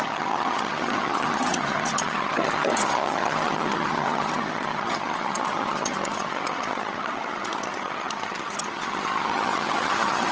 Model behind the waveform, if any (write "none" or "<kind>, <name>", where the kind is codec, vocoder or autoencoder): vocoder, HiFi-GAN